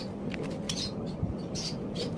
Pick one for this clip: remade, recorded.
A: recorded